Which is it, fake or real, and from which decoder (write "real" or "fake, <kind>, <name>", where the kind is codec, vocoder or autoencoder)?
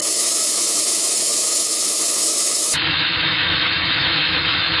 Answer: fake, autoencoder, DAC-VAE